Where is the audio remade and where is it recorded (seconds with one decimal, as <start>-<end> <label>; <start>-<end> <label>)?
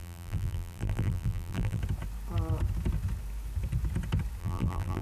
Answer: 0.0-1.8 remade; 1.8-4.4 recorded; 4.4-5.0 remade